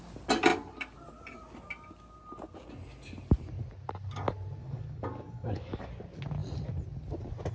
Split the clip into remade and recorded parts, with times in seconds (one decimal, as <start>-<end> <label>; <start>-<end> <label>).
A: 0.0-4.6 recorded; 4.6-5.9 remade; 5.9-7.5 recorded